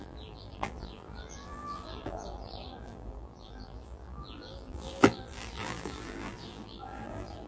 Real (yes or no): no